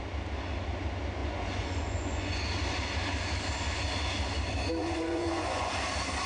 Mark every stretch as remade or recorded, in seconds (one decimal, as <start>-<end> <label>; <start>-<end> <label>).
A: 0.0-1.2 recorded; 1.2-2.4 remade; 2.4-4.8 recorded; 4.8-5.7 remade; 5.7-6.3 recorded